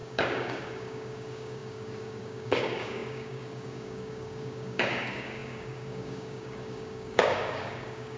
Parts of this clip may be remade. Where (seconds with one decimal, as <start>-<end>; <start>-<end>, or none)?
0.0-8.2